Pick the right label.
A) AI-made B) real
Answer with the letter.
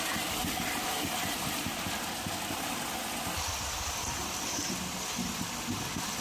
B